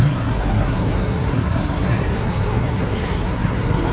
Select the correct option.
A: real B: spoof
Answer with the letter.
B